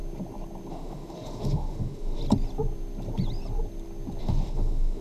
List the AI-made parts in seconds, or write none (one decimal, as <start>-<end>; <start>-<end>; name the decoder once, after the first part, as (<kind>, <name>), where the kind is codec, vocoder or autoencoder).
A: 0.7-2.2 (autoencoder, DAC-VAE); 4.2-5.0